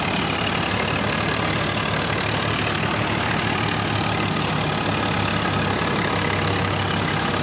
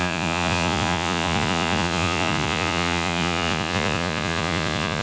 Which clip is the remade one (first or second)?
second